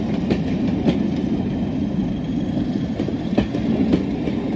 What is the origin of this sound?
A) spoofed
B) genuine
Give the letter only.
A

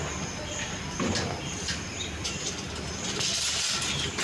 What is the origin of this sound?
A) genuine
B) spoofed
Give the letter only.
A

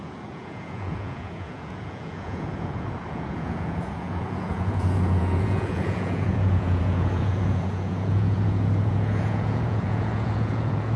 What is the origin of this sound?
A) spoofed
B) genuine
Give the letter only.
A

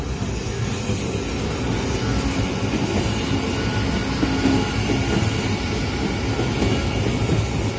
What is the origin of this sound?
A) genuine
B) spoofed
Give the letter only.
A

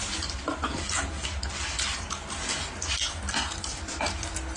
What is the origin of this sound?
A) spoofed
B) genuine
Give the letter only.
B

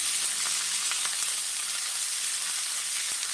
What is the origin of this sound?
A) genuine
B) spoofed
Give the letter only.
A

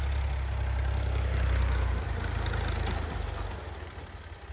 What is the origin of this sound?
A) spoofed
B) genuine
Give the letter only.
B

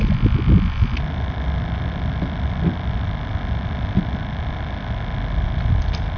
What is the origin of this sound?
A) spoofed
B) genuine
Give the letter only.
B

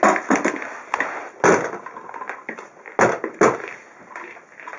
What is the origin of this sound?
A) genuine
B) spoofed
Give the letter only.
A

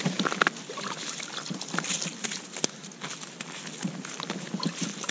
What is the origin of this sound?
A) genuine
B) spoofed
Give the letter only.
A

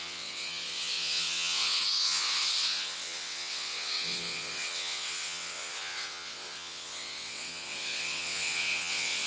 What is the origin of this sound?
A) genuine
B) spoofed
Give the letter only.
B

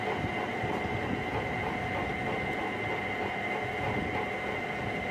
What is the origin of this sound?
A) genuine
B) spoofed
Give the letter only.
A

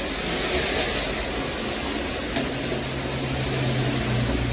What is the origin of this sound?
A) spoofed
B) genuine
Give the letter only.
B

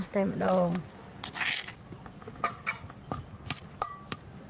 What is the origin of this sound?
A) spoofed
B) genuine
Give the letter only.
B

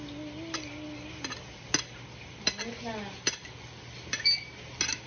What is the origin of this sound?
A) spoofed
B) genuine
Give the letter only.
B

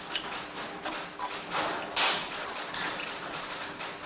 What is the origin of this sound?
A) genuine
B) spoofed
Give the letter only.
A